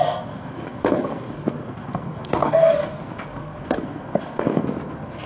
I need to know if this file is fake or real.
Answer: fake